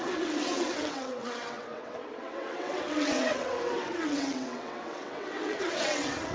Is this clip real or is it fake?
fake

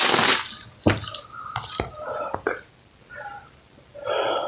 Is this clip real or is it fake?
real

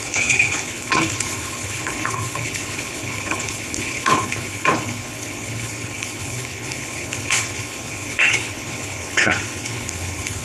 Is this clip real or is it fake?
fake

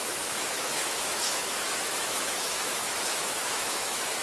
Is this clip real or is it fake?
fake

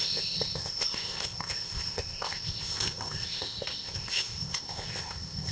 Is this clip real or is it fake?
fake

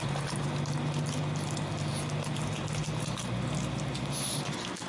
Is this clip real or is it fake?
real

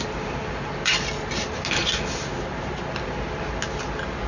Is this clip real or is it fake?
real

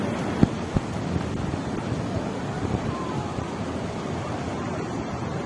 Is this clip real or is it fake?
real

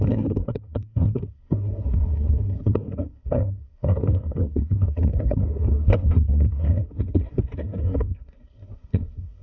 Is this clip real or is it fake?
fake